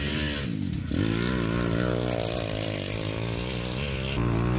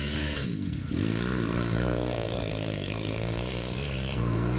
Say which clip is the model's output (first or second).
second